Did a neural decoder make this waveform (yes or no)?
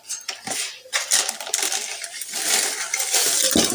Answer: no